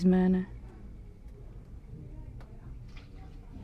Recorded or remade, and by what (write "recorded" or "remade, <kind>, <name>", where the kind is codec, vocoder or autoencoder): recorded